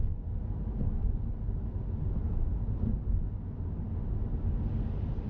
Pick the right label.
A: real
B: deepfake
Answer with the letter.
A